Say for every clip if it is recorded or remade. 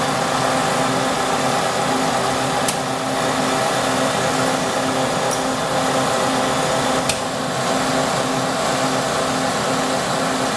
recorded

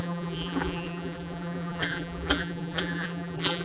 remade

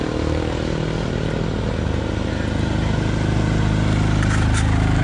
recorded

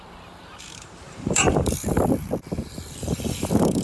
remade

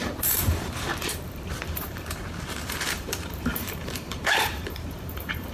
remade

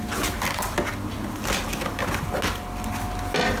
recorded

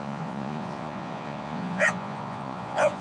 remade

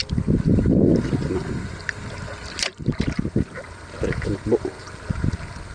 recorded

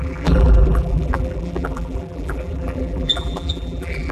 remade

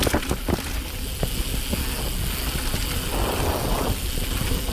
recorded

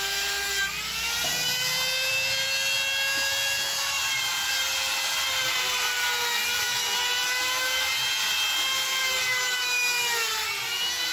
recorded